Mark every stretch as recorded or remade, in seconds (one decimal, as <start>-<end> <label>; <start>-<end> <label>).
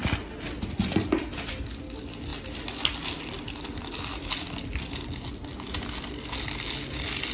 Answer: 0.0-7.3 recorded